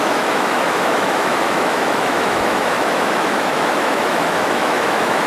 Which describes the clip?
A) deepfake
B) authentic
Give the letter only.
A